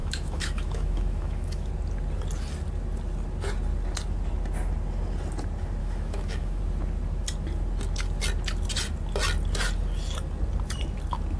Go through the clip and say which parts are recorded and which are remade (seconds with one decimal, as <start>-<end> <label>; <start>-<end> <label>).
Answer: 0.0-1.7 remade; 1.7-5.8 recorded; 5.8-6.6 remade; 6.6-11.4 recorded